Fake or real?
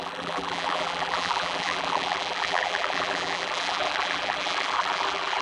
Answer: fake